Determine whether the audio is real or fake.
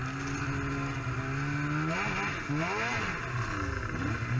real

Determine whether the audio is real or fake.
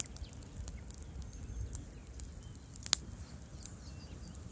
real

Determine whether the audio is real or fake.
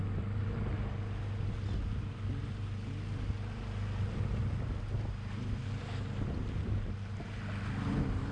real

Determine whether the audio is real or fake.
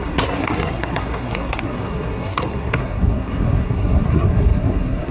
fake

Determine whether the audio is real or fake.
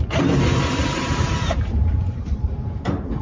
fake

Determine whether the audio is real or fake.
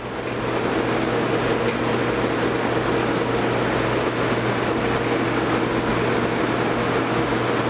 real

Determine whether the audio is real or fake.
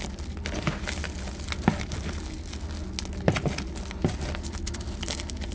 real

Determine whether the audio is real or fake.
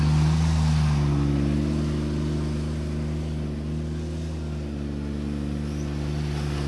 real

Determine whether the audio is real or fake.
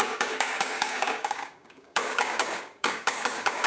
fake